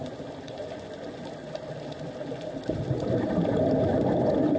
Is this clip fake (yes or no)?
no